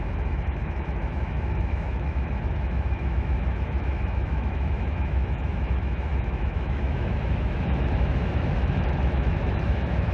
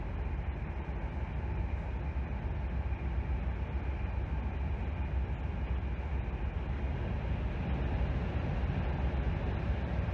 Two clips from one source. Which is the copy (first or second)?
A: first